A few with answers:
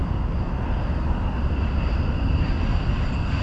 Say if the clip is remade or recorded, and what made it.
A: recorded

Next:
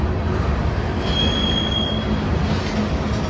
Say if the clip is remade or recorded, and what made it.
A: recorded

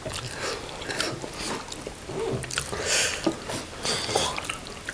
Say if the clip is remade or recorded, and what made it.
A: recorded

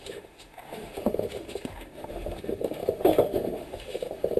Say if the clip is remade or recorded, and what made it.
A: remade, autoencoder, DAC-VAE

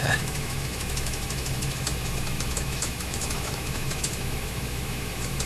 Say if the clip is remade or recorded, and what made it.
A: remade, autoencoder, DAC-VAE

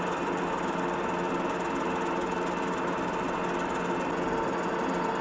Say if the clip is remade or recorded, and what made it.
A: recorded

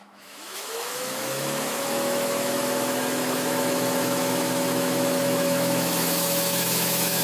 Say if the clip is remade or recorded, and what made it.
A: remade, autoencoder, DAC-VAE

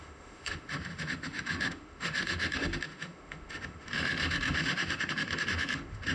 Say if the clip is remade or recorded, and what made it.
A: remade, autoencoder, DAC-VAE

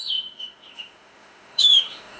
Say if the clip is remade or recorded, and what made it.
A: remade, autoencoder, DAC-VAE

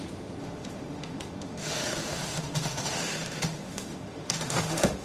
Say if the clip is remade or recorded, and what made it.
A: remade, autoencoder, DAC-VAE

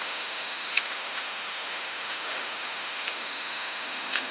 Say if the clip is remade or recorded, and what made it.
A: remade, autoencoder, DAC-VAE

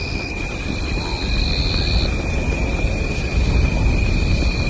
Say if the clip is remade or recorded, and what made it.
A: recorded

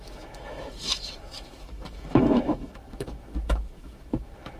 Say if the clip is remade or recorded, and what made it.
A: remade, autoencoder, DAC-VAE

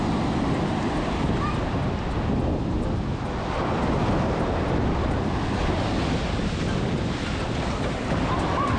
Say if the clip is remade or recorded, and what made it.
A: recorded